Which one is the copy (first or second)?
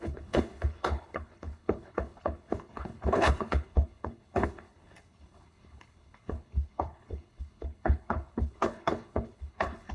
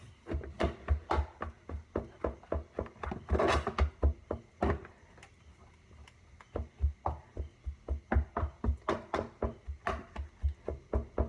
first